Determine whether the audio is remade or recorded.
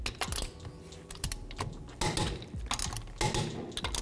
recorded